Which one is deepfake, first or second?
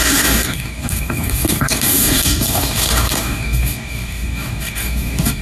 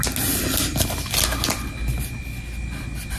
first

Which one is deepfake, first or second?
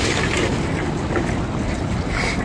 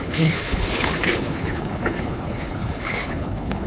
second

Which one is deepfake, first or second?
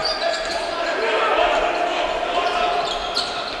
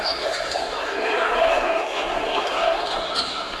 second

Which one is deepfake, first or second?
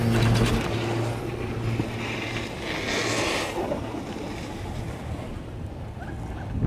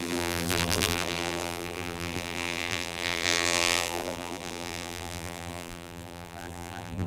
second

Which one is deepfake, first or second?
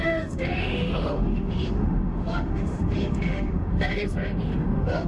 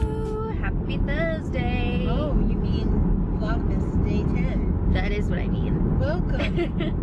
first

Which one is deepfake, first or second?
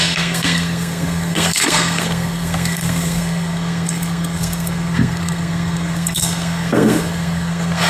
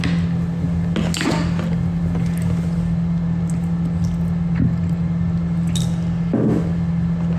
first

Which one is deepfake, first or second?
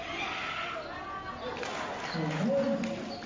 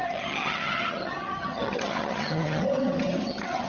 second